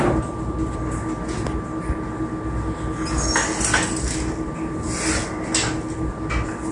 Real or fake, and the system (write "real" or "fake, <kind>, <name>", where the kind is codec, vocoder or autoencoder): real